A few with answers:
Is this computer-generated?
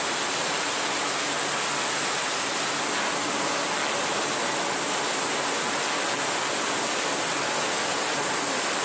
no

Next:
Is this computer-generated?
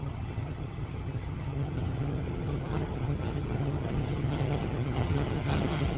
yes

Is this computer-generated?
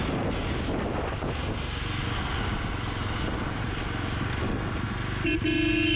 no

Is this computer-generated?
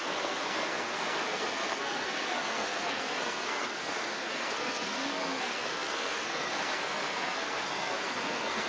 yes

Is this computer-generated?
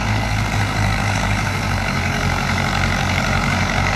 yes